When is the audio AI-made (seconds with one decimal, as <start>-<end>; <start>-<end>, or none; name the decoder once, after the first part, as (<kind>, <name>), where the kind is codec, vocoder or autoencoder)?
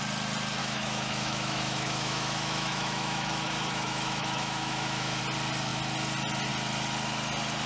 0.6-5.2 (autoencoder, DAC-VAE)